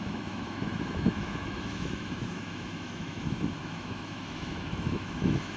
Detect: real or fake fake